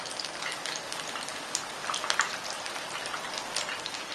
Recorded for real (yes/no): yes